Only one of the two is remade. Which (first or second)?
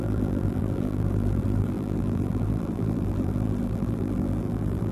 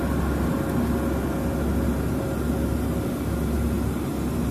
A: first